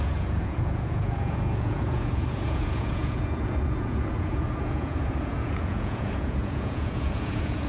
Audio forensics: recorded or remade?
remade